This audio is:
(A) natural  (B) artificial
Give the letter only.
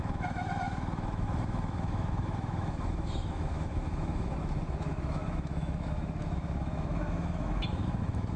B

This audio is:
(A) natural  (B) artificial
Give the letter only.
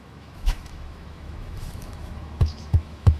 B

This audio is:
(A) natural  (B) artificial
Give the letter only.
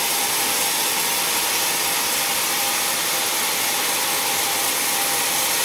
A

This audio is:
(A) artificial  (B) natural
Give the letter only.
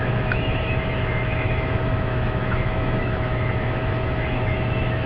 A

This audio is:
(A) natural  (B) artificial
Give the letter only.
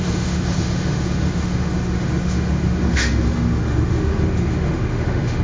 B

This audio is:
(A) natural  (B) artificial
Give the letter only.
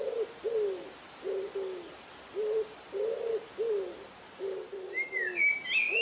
A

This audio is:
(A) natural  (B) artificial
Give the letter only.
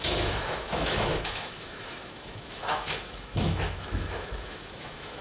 B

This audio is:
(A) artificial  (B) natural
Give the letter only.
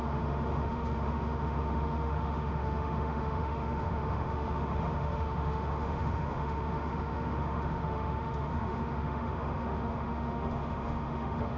A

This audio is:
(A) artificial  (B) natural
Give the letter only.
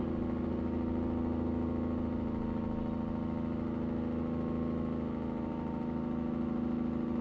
B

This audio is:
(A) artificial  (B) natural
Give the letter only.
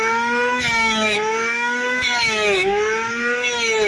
A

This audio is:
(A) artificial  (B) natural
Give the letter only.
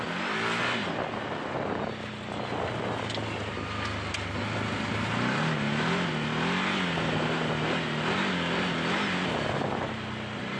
B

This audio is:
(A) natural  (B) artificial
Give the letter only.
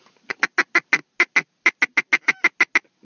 A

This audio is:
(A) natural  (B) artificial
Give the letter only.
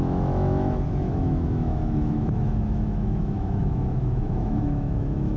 B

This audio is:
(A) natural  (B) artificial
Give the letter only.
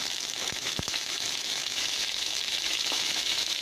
B